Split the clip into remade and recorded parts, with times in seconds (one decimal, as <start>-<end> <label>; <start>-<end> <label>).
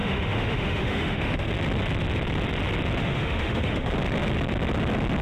0.0-1.5 remade; 1.5-3.0 recorded; 3.0-3.9 remade; 3.9-5.2 recorded